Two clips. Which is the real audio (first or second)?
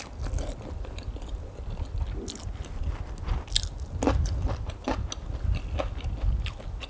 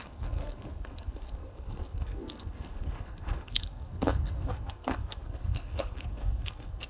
first